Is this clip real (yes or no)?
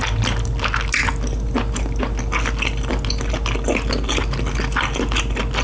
yes